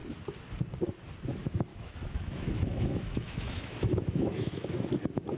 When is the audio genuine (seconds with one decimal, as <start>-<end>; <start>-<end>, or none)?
0.0-1.7; 4.9-5.4